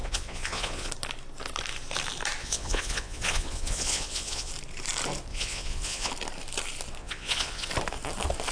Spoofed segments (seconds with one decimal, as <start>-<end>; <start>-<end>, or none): 0.0-0.9; 2.4-4.5; 5.3-6.1; 7.0-7.7